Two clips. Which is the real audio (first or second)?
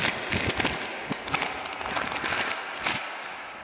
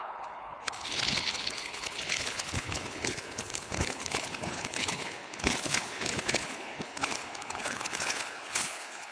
first